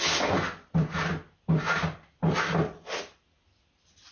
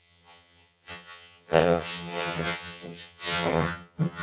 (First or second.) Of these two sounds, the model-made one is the second